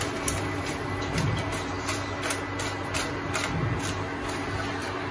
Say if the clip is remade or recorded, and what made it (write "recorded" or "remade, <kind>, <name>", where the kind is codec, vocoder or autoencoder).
recorded